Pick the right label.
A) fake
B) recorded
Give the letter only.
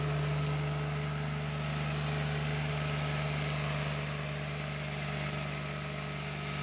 B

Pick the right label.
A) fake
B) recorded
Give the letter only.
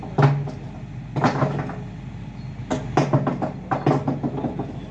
B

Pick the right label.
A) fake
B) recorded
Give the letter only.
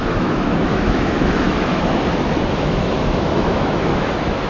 A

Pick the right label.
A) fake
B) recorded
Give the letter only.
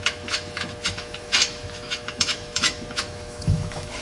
A